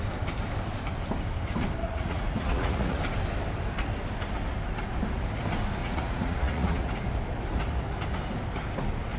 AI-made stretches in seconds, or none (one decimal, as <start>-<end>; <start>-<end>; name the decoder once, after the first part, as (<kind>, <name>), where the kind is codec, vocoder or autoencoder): 1.8-3.0 (vocoder, Vocos); 5.8-6.9